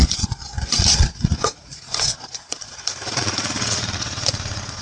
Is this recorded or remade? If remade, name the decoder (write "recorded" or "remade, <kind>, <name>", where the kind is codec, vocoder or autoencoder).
remade, vocoder, Vocos